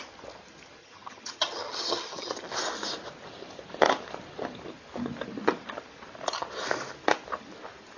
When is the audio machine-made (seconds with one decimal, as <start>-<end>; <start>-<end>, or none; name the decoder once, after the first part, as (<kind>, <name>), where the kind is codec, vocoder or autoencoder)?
0.8-2.4 (vocoder, HiFi-GAN)